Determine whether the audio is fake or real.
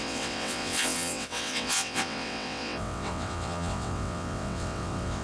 fake